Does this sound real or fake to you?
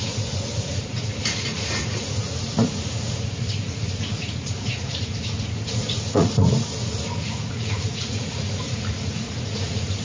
fake